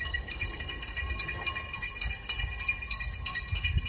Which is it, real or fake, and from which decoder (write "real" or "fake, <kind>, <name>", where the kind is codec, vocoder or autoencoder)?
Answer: fake, codec, SNAC